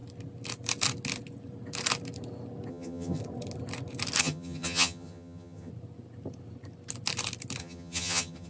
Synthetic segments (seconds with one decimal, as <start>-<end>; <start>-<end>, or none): 2.7-3.2; 4.2-5.7; 7.6-8.5